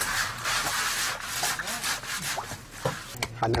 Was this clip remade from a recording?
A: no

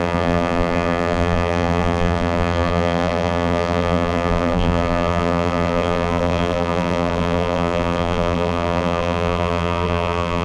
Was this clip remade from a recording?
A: yes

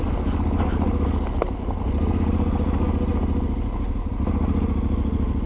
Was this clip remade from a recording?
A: no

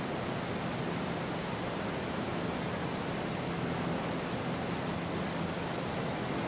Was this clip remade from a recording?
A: no